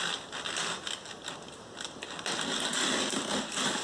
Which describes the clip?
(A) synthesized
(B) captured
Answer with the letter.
B